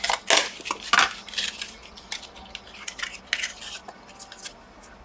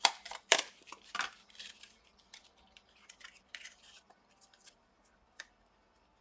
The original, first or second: first